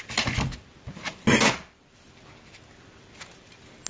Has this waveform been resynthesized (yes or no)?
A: no